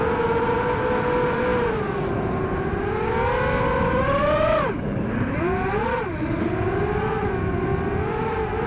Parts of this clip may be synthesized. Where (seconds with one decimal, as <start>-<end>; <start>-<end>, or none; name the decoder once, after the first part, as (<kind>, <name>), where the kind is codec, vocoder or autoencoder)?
none